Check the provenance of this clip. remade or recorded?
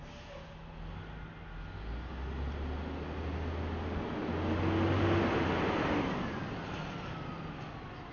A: recorded